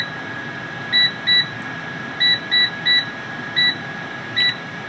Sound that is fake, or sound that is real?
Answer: real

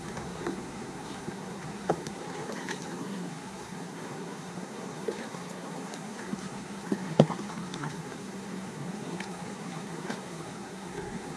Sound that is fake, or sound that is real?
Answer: fake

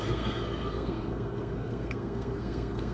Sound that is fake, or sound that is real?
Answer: fake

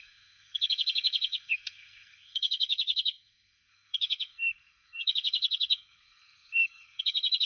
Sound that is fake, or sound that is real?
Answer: fake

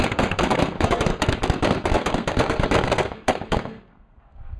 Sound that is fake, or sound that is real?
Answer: fake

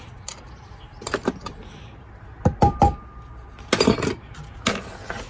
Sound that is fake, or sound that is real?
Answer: real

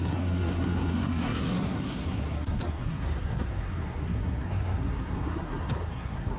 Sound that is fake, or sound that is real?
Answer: fake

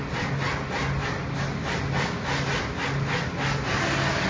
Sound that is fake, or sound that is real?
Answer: real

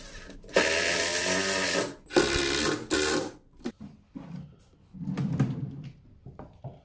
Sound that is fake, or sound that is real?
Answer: real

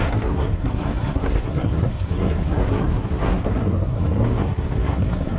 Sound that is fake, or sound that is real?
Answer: fake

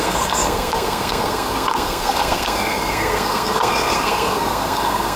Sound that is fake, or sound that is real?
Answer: fake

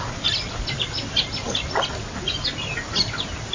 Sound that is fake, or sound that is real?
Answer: real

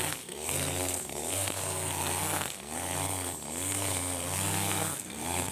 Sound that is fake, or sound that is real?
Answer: fake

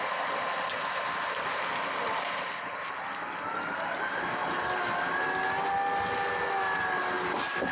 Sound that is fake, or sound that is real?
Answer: real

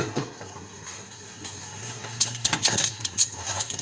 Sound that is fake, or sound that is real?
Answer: fake